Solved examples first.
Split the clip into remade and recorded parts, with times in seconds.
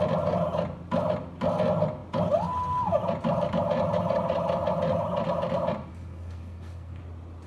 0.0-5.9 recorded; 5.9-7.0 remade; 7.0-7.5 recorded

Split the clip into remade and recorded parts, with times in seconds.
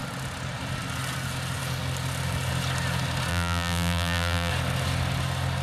0.0-3.3 recorded; 3.3-4.5 remade; 4.5-5.6 recorded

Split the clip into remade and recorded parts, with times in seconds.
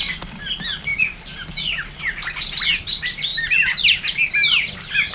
0.0-5.1 recorded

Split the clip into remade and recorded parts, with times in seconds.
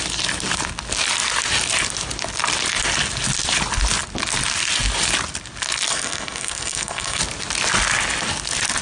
0.0-5.9 recorded; 5.9-7.2 remade; 7.2-8.8 recorded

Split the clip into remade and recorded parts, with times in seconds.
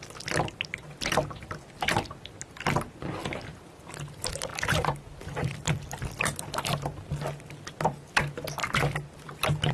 0.0-4.5 recorded; 4.5-6.6 remade; 6.6-9.7 recorded